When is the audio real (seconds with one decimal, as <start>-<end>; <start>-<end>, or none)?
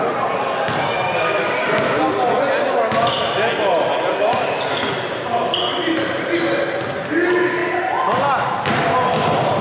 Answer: 0.0-9.6